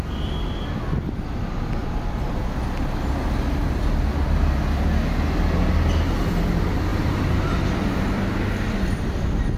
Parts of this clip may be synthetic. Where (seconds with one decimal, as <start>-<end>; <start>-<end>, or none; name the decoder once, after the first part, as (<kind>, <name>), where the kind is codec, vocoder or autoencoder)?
1.8-2.4 (vocoder, BigVGAN v2); 6.9-7.5